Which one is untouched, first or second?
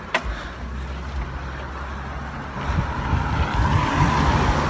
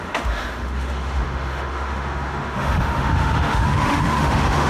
first